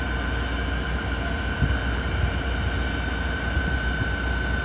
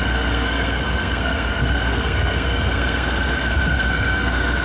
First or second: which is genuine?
first